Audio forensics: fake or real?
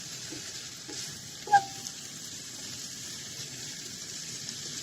fake